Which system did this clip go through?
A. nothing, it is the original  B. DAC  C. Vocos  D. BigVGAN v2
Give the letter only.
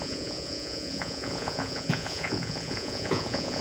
C